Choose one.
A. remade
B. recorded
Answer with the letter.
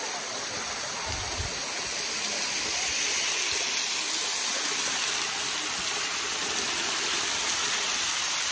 B